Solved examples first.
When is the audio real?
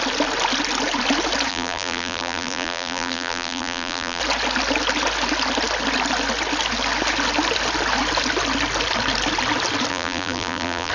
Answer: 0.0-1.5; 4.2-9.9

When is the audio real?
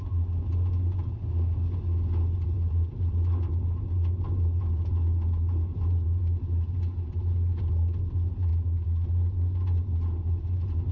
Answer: 0.0-10.9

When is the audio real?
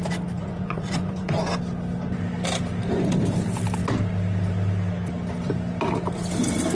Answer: 0.0-0.4; 1.5-6.7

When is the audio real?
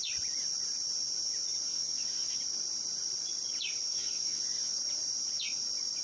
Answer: 0.0-1.7; 2.4-3.9; 4.8-6.0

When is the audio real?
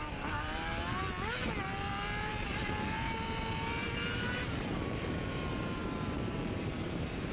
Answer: 1.0-1.6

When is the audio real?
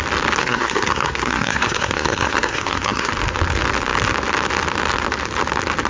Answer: 0.0-0.4; 3.1-5.9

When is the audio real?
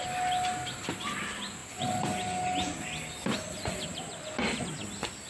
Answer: 0.0-5.3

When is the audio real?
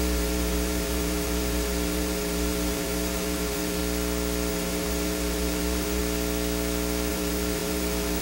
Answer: 3.8-4.5; 6.0-7.1